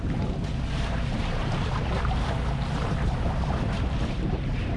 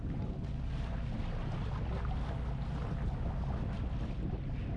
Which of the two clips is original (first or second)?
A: second